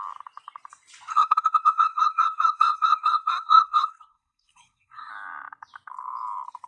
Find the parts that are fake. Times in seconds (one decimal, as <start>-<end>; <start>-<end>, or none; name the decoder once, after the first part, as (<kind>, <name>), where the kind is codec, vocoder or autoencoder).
1.1-5.1 (codec, SNAC)

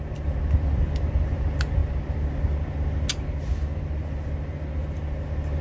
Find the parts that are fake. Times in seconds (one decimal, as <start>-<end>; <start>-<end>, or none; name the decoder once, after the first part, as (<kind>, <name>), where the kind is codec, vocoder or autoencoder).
none

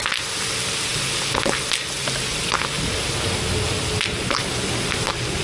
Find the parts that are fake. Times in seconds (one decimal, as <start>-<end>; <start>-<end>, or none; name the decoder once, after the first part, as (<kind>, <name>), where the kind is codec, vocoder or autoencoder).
none

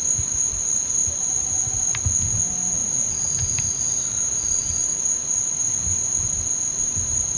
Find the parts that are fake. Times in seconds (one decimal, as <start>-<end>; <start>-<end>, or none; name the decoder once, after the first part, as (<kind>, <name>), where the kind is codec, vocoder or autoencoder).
none

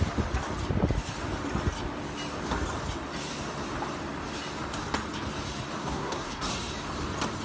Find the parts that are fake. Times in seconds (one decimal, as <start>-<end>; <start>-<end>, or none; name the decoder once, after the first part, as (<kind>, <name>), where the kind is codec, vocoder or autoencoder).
5.8-6.5 (codec, SNAC)

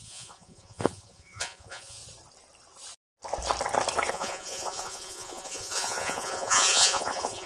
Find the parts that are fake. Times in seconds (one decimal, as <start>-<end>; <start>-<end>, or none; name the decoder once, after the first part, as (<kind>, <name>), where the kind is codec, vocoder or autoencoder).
0.0-2.0 (vocoder, Vocos); 4.1-7.5

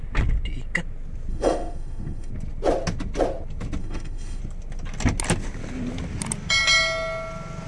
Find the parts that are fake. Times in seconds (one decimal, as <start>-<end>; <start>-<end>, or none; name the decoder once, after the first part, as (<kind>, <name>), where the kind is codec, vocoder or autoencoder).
1.3-2.3 (autoencoder, DAC-VAE); 3.8-4.4